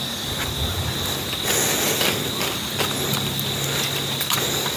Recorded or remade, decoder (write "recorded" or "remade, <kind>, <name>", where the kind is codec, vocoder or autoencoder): recorded